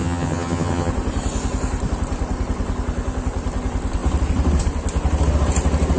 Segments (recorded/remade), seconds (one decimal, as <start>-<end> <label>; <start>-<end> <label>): 0.0-0.9 remade; 0.9-6.0 recorded